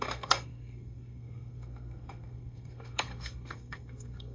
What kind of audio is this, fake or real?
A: fake